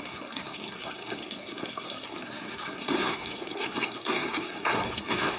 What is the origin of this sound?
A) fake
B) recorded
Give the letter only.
A